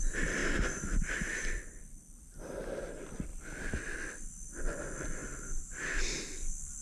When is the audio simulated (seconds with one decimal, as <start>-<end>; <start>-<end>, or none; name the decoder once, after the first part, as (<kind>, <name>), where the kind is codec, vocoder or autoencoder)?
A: 0.0-0.4 (vocoder, BigVGAN v2); 1.8-3.3; 4.6-5.2